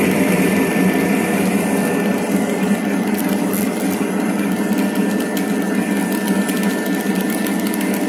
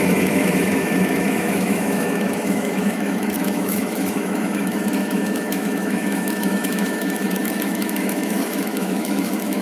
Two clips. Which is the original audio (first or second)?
first